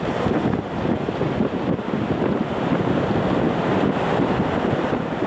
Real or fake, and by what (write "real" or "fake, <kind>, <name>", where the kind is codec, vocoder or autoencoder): real